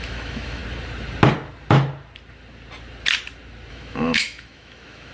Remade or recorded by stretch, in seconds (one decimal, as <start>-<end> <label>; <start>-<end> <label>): 0.0-0.6 remade; 0.6-3.7 recorded; 3.7-5.1 remade